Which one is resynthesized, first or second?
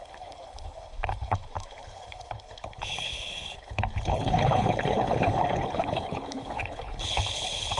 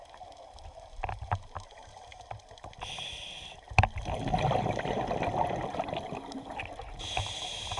first